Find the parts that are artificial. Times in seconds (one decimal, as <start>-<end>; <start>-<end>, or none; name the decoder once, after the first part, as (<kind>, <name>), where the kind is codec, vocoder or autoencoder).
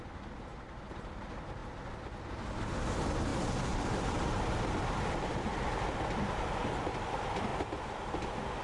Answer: 0.5-1.2 (vocoder, BigVGAN v2); 3.3-4.6